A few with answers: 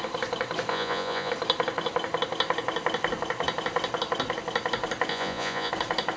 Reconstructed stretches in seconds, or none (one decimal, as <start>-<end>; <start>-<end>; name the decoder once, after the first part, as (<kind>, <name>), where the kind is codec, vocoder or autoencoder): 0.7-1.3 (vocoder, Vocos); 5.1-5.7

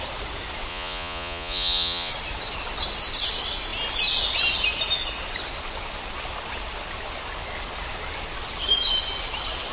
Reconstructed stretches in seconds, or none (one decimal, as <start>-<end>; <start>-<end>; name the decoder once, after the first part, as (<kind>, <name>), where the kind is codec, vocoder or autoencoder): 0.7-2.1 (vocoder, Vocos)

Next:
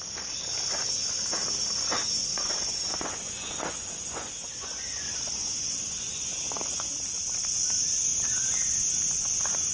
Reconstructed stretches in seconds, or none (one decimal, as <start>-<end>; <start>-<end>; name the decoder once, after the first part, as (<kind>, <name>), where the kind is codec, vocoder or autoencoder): 2.2-6.9 (vocoder, Vocos)

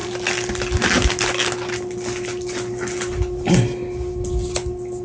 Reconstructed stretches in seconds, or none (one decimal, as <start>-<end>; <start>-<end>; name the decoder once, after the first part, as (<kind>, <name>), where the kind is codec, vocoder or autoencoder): none